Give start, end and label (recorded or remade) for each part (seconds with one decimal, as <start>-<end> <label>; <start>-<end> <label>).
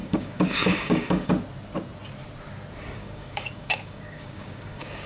0.0-1.3 remade; 1.3-3.0 recorded; 3.0-5.1 remade